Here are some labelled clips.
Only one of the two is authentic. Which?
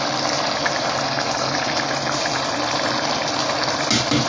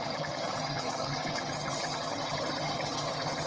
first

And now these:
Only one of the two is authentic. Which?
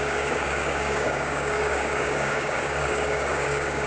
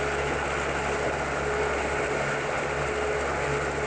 second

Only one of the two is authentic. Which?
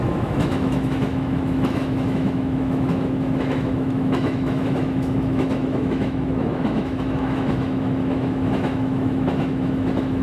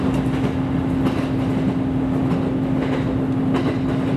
second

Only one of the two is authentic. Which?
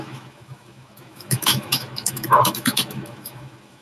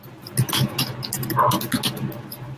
second